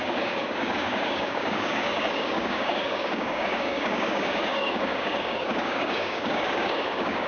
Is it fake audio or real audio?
fake